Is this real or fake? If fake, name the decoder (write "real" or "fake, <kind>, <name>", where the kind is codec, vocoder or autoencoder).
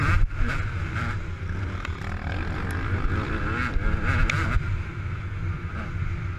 real